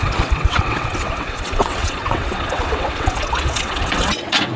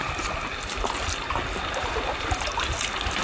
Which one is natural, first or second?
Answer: second